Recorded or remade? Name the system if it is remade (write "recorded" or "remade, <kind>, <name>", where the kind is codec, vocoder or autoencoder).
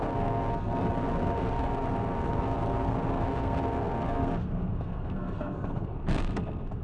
remade, codec, SNAC